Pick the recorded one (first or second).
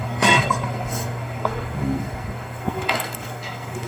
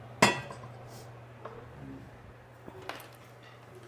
second